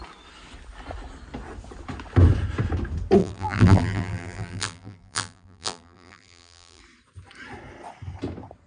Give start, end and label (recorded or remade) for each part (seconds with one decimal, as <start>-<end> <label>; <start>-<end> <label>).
0.0-3.2 recorded; 3.2-6.8 remade; 6.8-8.7 recorded